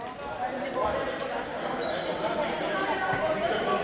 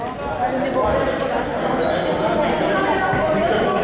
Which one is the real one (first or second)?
second